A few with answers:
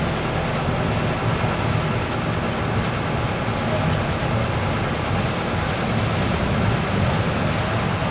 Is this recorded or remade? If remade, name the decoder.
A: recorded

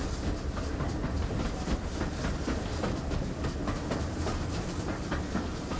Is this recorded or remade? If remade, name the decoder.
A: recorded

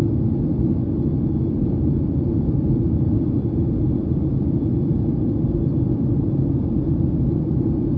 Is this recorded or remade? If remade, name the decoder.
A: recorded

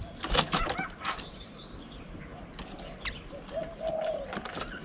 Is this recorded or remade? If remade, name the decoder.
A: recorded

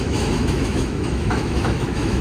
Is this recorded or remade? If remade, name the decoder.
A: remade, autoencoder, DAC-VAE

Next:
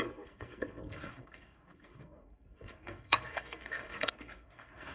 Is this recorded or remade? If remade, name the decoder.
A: remade, codec, SNAC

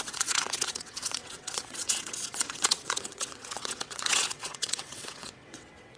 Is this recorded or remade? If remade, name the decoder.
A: remade, vocoder, WaveNeXt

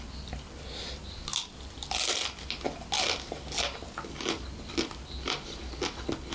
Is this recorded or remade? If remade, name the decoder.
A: recorded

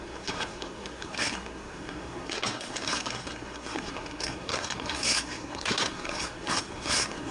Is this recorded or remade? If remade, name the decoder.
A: remade, codec, SNAC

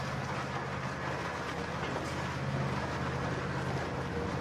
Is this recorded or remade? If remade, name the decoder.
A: recorded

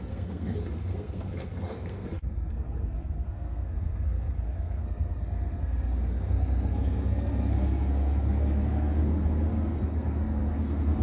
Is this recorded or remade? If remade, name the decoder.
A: remade, codec, SNAC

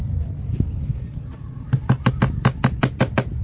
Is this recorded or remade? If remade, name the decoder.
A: recorded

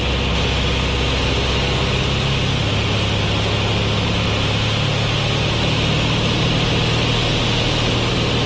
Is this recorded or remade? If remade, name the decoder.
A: recorded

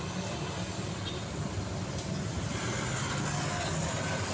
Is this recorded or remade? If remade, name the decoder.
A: recorded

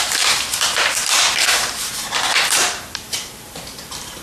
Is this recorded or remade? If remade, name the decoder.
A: remade, vocoder, BigVGAN v2